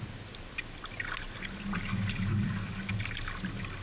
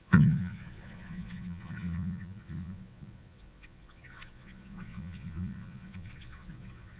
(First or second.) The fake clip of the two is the second